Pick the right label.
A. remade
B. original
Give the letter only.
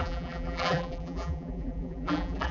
A